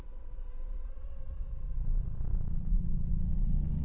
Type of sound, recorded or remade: remade